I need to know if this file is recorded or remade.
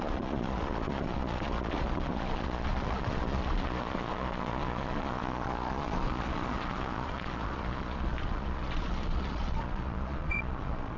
remade